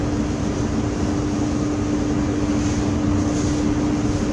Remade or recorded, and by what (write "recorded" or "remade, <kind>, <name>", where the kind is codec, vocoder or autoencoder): recorded